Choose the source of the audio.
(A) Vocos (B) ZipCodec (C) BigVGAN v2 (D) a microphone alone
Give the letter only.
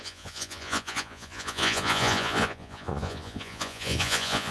A